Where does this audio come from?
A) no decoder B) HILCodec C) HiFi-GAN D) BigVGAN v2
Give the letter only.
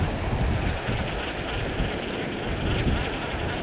A